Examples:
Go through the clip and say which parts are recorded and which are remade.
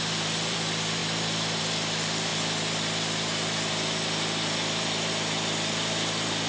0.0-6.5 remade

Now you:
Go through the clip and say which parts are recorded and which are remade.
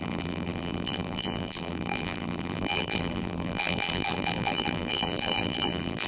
0.0-6.1 remade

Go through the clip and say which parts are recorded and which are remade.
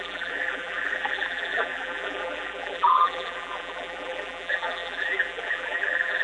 0.0-6.2 remade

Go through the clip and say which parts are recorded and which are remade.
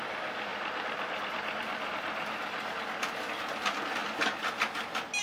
0.0-0.5 recorded; 0.5-1.2 remade; 1.2-5.2 recorded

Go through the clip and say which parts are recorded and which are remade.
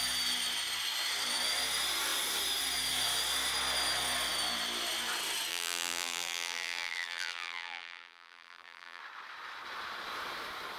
0.0-5.5 recorded; 5.5-9.0 remade; 9.0-10.8 recorded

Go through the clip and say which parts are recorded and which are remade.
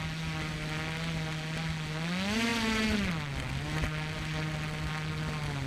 0.0-5.7 recorded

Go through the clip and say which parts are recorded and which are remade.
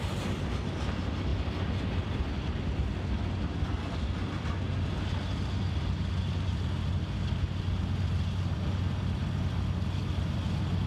0.0-10.9 recorded